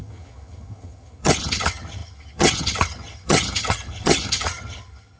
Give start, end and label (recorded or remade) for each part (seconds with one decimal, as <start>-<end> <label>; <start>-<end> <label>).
0.0-5.2 remade